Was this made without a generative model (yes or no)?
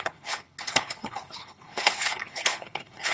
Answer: no